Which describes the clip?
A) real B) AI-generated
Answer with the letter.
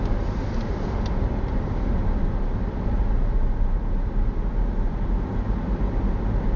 A